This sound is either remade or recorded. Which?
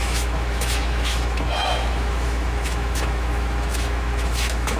remade